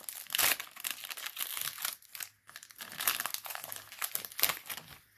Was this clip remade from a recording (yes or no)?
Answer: no